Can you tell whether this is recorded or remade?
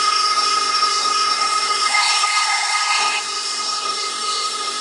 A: remade